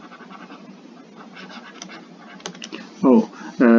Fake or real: real